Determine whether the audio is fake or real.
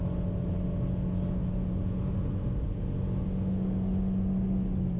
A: real